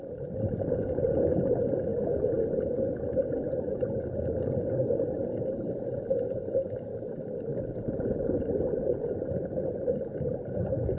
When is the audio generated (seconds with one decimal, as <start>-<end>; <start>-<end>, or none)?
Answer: 0.0-1.9; 6.3-7.5; 9.2-11.0

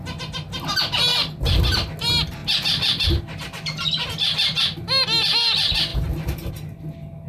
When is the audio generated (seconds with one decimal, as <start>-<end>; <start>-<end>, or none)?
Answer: 1.1-1.7; 5.9-6.5

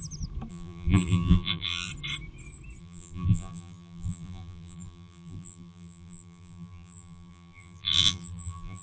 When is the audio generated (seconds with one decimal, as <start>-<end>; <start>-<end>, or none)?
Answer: 0.5-1.9; 2.8-8.8

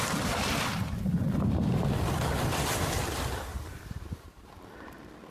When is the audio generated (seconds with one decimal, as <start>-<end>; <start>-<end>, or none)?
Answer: 3.5-4.7

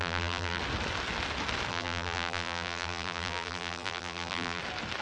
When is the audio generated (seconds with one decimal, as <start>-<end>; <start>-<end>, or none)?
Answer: 0.0-0.6; 1.7-4.6

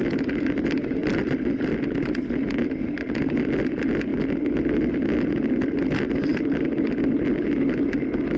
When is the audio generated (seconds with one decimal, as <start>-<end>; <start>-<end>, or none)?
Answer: 4.1-5.5; 6.3-6.8

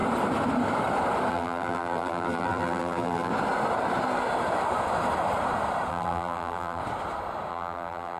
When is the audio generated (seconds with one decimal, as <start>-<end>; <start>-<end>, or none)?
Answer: 1.3-3.3; 5.9-6.8; 7.5-8.2